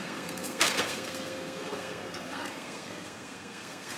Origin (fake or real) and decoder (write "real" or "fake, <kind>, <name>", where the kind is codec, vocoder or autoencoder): fake, codec, SNAC